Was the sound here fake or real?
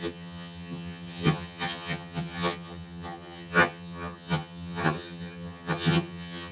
fake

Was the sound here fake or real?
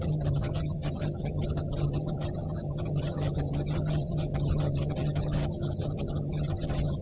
fake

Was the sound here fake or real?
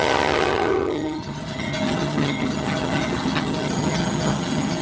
fake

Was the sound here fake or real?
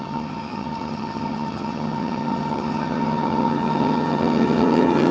fake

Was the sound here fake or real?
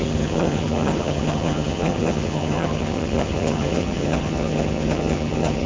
fake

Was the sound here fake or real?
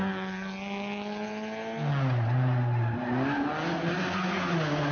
real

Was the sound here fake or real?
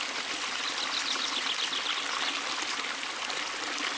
real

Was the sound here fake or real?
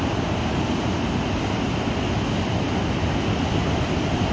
real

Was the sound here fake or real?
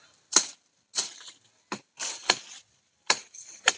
real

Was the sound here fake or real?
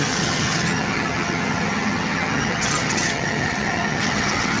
fake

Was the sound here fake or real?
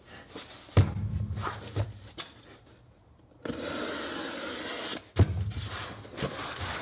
real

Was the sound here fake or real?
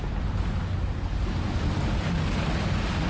real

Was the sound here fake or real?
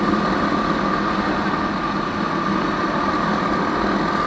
real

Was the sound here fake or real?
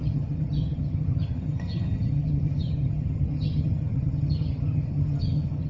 fake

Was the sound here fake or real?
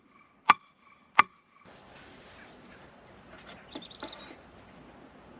real